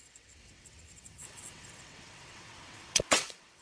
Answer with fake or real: fake